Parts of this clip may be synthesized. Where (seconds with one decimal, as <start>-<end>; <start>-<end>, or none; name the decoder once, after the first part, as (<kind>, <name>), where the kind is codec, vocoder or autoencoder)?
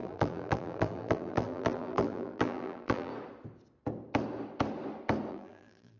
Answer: 0.0-3.1 (vocoder, BigVGAN v2); 5.3-6.0